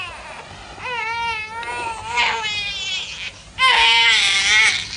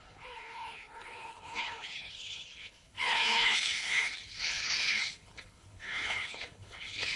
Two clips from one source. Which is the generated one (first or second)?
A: second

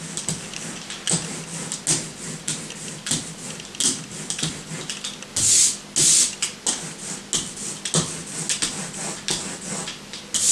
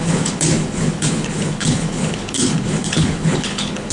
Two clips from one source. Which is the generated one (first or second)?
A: second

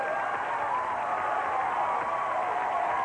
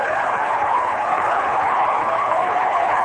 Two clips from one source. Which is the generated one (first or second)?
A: second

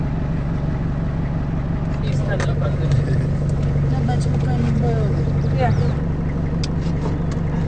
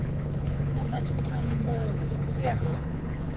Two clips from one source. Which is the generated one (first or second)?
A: second